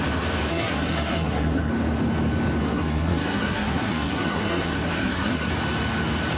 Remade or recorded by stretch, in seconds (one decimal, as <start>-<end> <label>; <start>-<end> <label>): 0.0-0.5 recorded; 0.5-1.7 remade; 1.7-2.6 recorded; 2.6-5.5 remade; 5.5-6.4 recorded